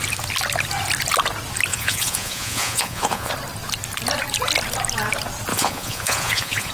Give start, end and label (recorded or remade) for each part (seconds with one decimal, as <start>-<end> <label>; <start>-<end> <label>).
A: 0.0-1.7 recorded; 1.7-3.3 remade; 3.3-5.5 recorded; 5.5-6.7 remade

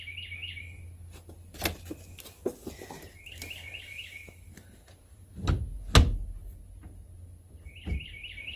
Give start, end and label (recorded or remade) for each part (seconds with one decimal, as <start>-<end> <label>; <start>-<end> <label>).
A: 0.0-8.6 recorded

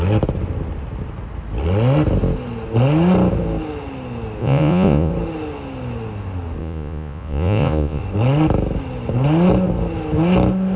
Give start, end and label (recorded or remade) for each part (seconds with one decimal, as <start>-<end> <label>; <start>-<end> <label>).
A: 0.0-4.4 recorded; 4.4-5.1 remade; 5.1-6.6 recorded; 6.6-8.0 remade; 8.0-10.8 recorded